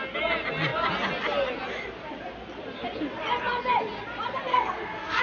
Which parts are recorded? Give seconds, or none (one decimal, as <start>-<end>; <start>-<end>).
0.0-4.5